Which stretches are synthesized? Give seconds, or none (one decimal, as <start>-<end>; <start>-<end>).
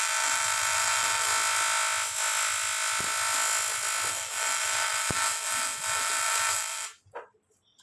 0.0-1.3; 4.1-7.8